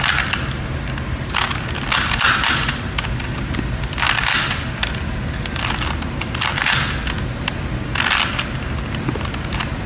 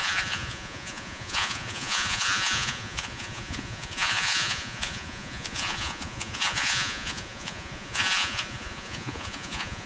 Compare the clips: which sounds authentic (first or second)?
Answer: first